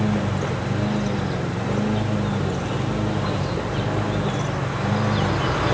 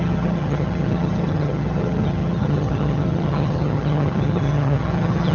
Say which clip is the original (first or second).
first